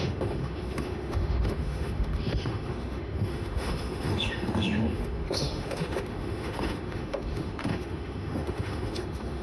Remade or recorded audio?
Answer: remade